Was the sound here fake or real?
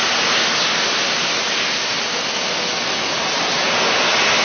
real